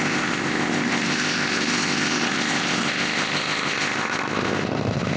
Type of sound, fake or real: fake